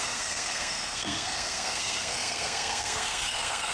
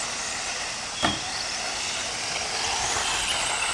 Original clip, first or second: second